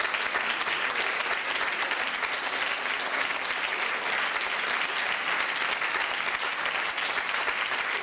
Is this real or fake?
real